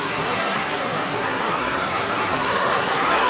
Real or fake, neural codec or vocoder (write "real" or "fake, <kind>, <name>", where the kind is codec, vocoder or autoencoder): fake, codec, SNAC